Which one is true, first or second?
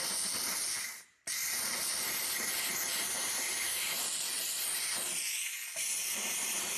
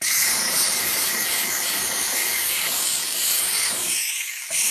first